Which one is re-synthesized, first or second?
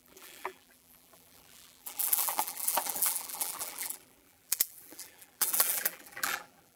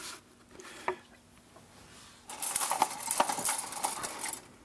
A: first